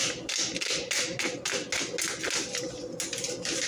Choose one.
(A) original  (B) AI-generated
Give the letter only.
A